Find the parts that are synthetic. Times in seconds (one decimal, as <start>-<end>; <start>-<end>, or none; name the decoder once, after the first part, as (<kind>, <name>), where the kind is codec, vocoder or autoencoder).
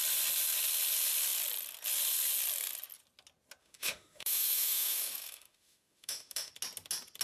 3.6-6.5 (autoencoder, DAC-VAE)